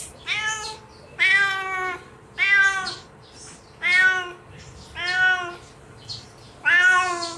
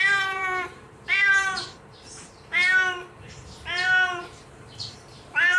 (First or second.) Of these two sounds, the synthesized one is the second